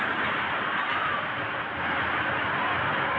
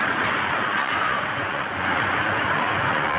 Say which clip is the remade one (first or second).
second